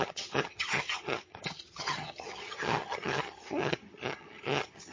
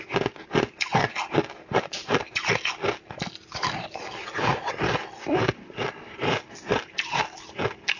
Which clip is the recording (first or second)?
second